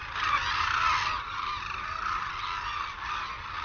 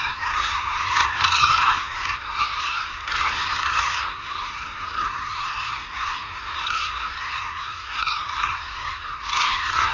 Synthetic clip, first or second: second